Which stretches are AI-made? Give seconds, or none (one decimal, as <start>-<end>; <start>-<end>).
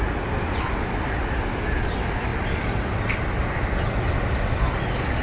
none